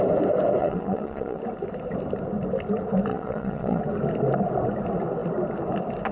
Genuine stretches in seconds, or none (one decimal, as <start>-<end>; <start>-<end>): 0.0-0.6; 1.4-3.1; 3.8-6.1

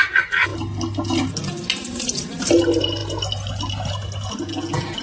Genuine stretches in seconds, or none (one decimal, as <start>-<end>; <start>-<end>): 0.0-5.0

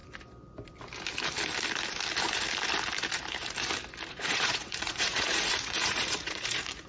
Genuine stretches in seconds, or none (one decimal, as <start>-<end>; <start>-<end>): 0.0-4.1

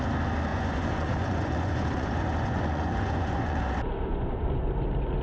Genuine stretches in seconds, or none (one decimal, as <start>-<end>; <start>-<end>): 0.0-0.5; 3.6-4.1; 4.7-5.2

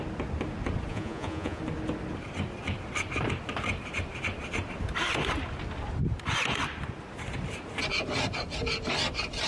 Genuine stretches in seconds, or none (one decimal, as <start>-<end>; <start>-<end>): 0.0-0.9; 1.6-9.5

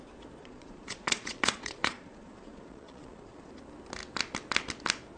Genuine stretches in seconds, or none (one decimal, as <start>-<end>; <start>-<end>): 0.0-0.4; 3.5-5.2